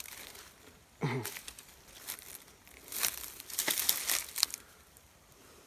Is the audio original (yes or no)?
yes